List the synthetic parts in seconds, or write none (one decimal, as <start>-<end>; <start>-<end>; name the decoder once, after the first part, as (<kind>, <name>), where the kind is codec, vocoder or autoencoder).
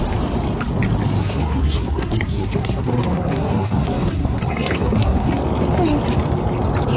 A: 1.2-5.4 (codec, SNAC)